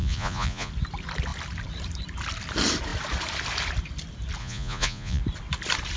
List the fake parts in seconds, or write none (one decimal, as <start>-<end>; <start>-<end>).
0.0-0.7; 4.4-5.2